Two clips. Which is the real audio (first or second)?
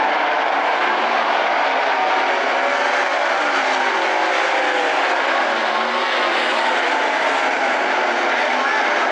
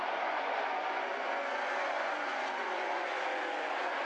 first